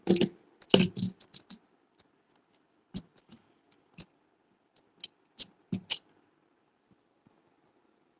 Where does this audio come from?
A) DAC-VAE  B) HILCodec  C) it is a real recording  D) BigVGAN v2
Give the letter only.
C